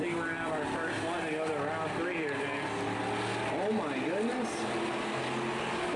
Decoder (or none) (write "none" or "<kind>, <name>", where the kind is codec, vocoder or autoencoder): none